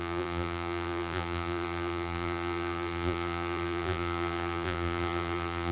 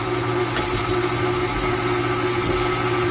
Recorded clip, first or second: second